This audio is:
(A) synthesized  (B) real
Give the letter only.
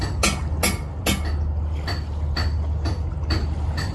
B